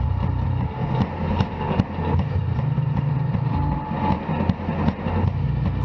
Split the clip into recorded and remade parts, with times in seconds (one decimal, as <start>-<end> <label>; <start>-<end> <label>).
0.0-2.4 recorded; 2.4-3.8 remade; 3.8-5.8 recorded